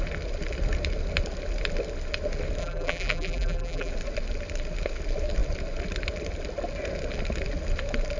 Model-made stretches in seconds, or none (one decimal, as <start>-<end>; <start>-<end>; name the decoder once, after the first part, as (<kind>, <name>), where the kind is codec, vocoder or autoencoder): 2.6-3.9 (vocoder, BigVGAN v2)